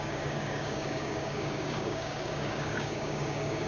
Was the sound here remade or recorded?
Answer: remade